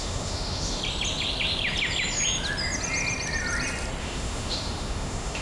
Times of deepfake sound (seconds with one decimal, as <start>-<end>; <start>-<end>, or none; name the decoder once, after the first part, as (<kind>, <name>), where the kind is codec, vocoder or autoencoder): 0.0-0.8 (autoencoder, DAC-VAE); 4.0-5.4